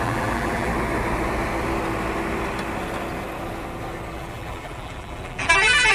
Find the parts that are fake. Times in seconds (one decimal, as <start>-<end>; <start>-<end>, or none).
0.0-0.7; 4.1-5.9